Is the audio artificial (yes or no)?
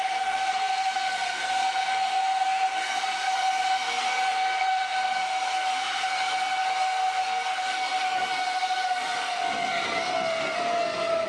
yes